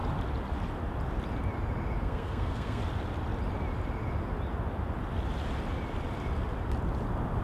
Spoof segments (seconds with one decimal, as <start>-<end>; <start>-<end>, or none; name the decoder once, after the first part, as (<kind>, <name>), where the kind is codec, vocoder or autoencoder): 2.0-2.8 (codec, SNAC)